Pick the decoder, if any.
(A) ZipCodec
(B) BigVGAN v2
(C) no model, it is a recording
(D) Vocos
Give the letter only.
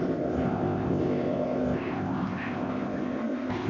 A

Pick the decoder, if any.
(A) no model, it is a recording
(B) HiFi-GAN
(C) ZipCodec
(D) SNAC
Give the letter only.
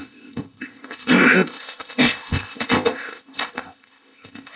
C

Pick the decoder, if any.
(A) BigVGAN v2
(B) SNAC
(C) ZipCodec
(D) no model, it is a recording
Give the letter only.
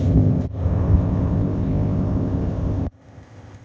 C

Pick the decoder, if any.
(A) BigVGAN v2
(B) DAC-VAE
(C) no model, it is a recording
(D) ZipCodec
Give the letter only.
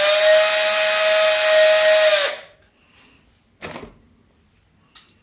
C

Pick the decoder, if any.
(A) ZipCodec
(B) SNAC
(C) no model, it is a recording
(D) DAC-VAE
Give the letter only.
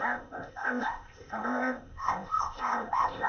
A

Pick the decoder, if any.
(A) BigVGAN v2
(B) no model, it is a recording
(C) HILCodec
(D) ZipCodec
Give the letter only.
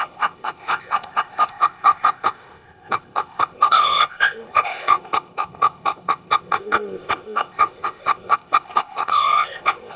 D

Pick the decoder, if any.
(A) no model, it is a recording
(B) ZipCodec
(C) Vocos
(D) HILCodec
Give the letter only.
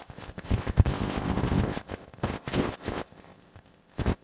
B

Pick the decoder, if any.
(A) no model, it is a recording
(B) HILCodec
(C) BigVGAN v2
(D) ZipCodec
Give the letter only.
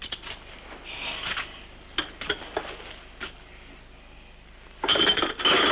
A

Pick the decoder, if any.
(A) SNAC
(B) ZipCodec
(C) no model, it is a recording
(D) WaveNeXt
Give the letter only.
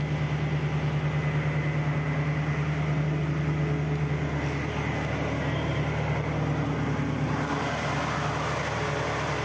C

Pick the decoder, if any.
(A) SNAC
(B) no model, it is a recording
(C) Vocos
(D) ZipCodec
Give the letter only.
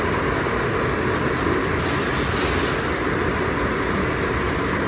B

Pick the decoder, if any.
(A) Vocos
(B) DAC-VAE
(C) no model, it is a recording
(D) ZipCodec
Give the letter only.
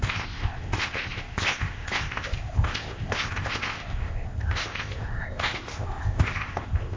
D